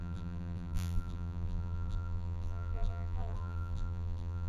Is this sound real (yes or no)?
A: no